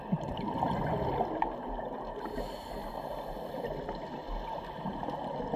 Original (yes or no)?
yes